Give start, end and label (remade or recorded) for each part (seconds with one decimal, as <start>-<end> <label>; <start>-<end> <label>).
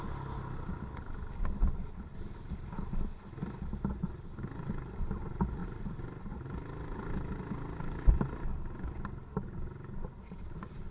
0.0-5.6 recorded; 5.6-8.1 remade; 8.1-10.9 recorded